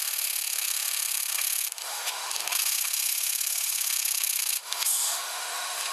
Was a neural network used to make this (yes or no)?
yes